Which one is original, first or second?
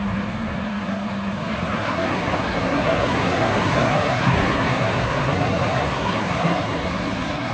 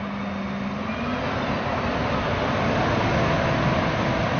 second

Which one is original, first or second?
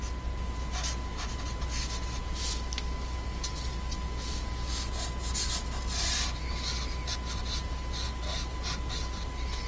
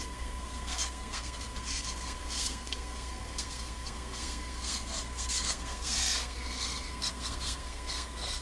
first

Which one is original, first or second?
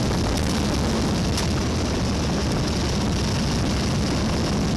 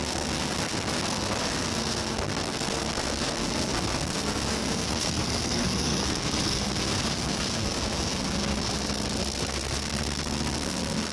first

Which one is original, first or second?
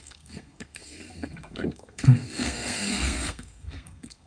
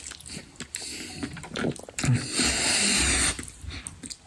second